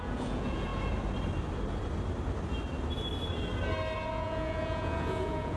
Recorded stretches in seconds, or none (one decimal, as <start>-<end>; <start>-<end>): 0.7-4.1